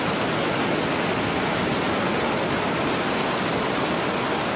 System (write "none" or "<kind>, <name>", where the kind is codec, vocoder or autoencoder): none